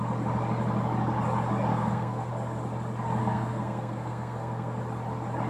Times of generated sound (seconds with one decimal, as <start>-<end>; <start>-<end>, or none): 1.7-2.3; 3.2-4.8